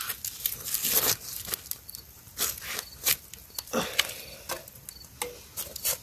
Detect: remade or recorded recorded